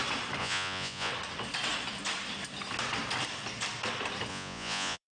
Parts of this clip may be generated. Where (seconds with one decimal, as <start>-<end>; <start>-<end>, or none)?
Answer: 0.4-1.1; 4.3-5.2